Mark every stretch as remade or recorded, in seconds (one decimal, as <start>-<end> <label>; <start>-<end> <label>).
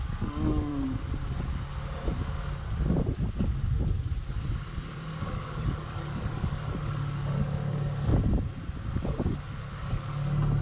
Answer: 0.0-0.7 remade; 0.7-5.3 recorded; 5.3-8.1 remade; 8.1-9.6 recorded; 9.6-10.6 remade